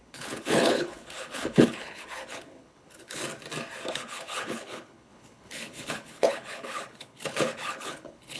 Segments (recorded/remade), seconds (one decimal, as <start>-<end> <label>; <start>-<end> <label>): 0.0-3.2 remade; 3.2-3.9 recorded; 3.9-8.4 remade